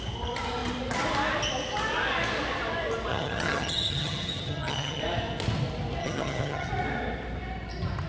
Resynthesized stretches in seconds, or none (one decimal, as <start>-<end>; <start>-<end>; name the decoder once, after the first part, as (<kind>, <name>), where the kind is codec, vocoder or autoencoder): 3.1-5.0 (vocoder, HiFi-GAN); 6.0-6.7